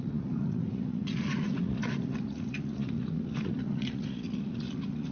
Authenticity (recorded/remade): remade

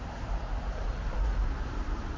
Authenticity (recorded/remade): recorded